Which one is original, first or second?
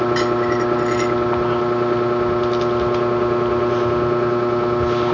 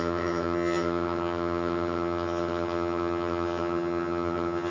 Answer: first